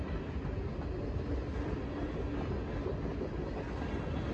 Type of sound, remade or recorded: recorded